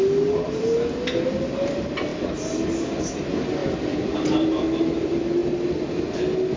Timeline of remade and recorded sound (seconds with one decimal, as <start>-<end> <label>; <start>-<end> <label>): 0.0-6.6 recorded